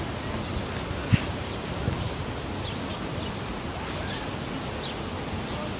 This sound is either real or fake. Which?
real